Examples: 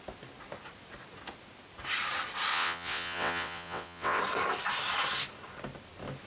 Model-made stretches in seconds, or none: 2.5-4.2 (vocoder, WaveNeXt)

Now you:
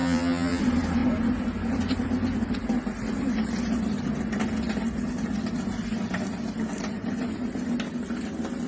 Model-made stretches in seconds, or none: 0.0-0.6 (vocoder, BigVGAN v2)

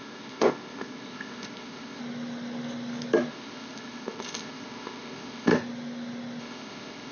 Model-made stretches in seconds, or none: 0.0-2.0 (codec, ZipCodec); 3.3-5.5; 6.4-7.1

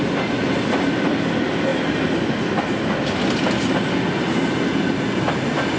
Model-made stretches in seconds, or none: none

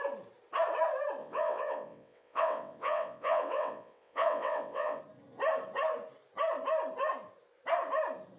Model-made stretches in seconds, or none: 1.2-5.0 (vocoder, WaveNeXt)

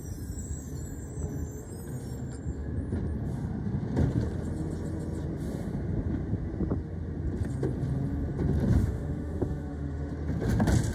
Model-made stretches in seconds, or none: 8.8-10.1 (autoencoder, DAC-VAE)

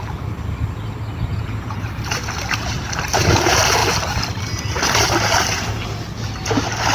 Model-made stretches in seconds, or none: 1.3-1.9 (vocoder, Vocos)

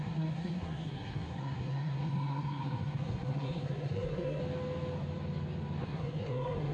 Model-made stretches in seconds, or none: 0.0-4.4 (codec, SNAC); 5.8-6.7